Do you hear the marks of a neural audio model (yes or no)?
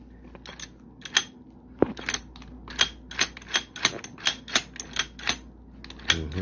no